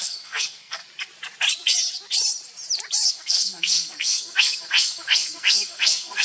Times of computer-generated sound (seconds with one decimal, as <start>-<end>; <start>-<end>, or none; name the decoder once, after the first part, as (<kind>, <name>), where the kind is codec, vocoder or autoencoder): 0.0-0.8 (codec, SNAC); 3.1-6.2